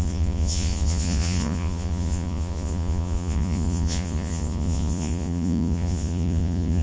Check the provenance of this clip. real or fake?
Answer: fake